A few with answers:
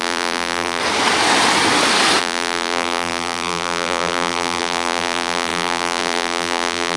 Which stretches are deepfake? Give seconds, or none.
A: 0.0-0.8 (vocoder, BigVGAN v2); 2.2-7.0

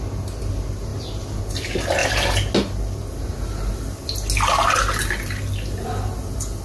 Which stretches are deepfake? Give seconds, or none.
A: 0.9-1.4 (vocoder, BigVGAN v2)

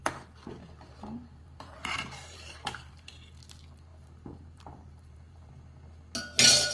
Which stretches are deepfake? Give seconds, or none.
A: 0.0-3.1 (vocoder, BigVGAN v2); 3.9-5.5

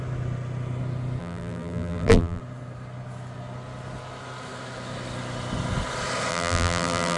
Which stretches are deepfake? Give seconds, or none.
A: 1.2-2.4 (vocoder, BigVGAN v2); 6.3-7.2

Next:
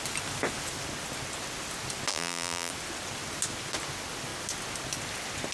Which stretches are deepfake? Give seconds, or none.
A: 2.1-2.7 (vocoder, BigVGAN v2)